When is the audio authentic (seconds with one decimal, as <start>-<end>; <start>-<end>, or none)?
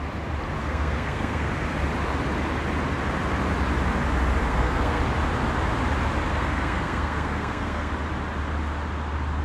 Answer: 0.0-0.6; 1.5-4.4; 5.0-6.3; 7.9-9.4